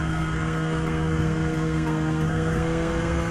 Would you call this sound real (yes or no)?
no